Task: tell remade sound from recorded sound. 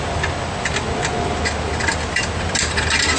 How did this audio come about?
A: recorded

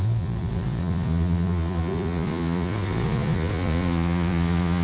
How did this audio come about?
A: remade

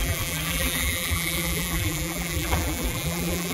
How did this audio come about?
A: remade